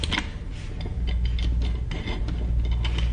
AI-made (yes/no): no